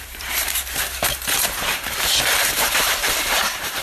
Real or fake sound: fake